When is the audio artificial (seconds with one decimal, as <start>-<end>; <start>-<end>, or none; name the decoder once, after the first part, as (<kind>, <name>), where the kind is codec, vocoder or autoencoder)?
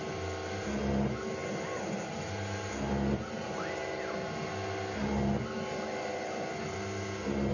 none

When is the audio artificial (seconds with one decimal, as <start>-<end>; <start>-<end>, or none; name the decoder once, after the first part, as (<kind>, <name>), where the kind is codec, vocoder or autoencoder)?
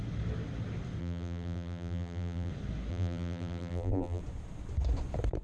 1.0-2.5 (vocoder, BigVGAN v2); 2.9-4.2